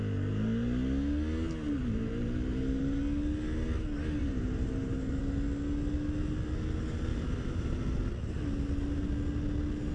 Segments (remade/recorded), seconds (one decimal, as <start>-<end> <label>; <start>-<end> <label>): 0.0-1.8 recorded; 1.8-3.0 remade; 3.0-4.2 recorded; 4.2-5.2 remade; 5.2-7.1 recorded; 7.1-8.0 remade; 8.0-9.9 recorded